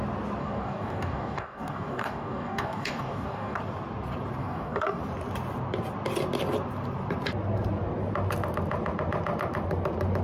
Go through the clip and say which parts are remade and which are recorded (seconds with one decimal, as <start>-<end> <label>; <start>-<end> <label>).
0.0-0.4 recorded; 0.4-3.6 remade; 3.6-4.4 recorded; 4.4-5.0 remade; 5.0-10.2 recorded